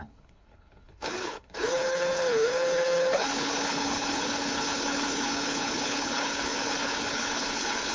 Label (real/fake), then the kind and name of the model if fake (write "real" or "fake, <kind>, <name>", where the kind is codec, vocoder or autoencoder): fake, codec, HILCodec